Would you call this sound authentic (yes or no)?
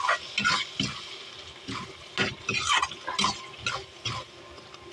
yes